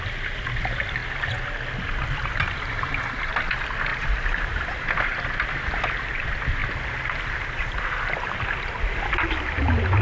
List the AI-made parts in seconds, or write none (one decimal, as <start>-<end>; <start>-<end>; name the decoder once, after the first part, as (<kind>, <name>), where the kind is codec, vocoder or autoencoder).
none